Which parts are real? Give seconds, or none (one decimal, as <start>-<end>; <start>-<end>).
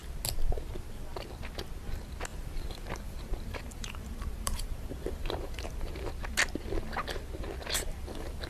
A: 0.0-2.3; 6.1-8.5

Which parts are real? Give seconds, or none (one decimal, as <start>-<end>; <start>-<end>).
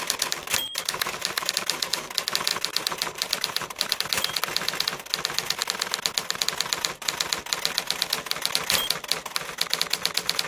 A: 0.0-0.6; 2.1-2.5; 4.4-10.5